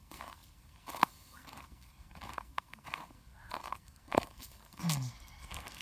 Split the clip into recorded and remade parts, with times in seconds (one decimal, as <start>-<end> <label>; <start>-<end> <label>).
0.0-5.8 remade